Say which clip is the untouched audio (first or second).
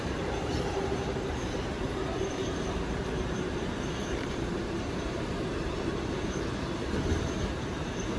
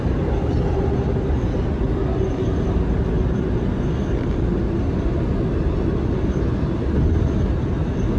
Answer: second